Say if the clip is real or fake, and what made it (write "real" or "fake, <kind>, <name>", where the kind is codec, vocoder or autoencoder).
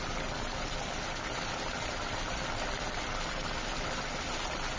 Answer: real